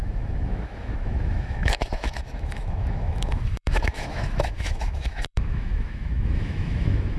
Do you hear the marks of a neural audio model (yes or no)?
yes